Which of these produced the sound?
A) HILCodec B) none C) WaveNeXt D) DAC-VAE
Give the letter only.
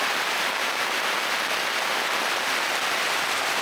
B